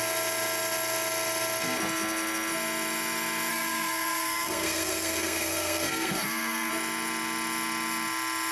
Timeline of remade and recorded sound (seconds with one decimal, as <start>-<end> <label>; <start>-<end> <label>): 0.0-3.5 recorded; 3.5-6.7 remade; 6.7-8.5 recorded